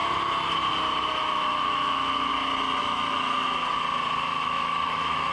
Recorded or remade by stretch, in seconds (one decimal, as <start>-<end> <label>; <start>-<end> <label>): 0.0-1.2 recorded; 1.2-2.3 remade; 2.3-2.8 recorded; 2.8-3.6 remade; 3.6-4.2 recorded; 4.2-5.3 remade